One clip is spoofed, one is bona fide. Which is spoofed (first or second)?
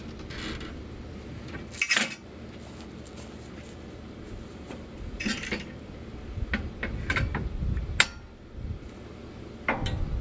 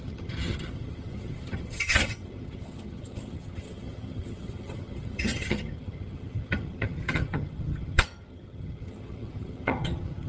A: second